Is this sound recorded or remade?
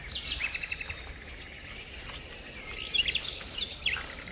recorded